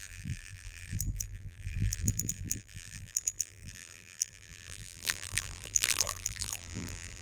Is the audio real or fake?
fake